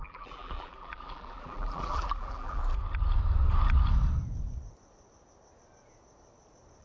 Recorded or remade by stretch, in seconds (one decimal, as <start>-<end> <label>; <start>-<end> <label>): 0.0-2.6 remade; 2.6-6.8 recorded